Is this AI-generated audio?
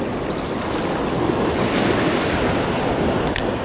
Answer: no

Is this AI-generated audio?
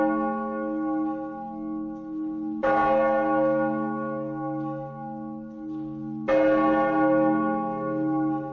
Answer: no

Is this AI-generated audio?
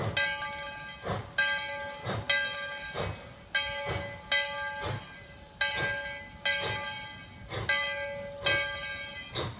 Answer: no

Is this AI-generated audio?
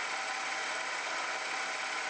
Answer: no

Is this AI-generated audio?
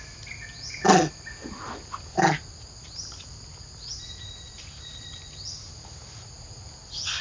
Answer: no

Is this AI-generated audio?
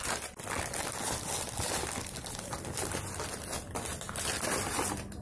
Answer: no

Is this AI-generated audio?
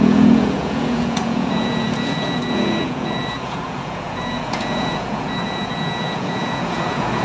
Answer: yes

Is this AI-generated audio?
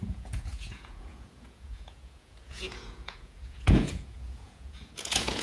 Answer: yes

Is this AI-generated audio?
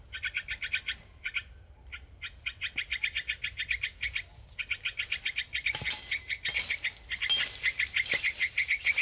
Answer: no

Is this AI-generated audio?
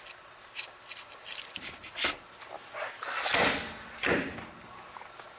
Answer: no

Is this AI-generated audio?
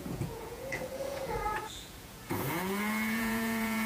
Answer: yes